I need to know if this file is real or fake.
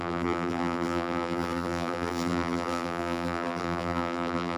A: fake